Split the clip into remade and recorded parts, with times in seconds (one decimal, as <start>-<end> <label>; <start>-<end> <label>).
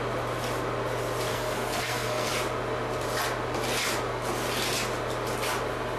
0.0-1.3 recorded; 1.3-2.3 remade; 2.3-6.0 recorded